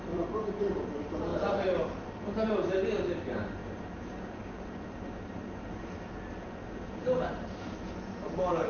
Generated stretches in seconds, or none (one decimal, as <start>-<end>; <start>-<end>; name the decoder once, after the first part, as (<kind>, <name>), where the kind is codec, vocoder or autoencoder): 0.0-8.7 (vocoder, BigVGAN v2)